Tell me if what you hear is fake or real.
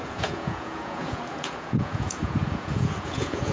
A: fake